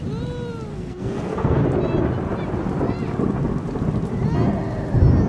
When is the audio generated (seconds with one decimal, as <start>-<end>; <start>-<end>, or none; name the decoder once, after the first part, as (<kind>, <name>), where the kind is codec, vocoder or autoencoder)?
0.7-1.6 (codec, SNAC)